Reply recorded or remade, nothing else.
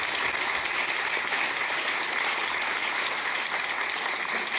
recorded